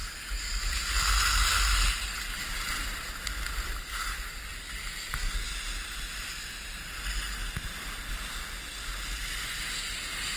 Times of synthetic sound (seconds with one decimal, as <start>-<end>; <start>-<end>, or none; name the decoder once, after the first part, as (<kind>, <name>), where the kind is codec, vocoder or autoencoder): none